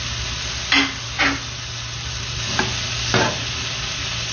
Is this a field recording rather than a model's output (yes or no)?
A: yes